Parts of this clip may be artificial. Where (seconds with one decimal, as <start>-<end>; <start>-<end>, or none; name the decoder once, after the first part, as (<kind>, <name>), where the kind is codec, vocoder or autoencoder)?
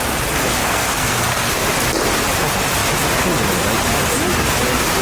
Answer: 0.6-1.6 (codec, SNAC)